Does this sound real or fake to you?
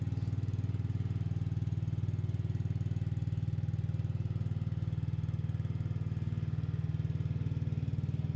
real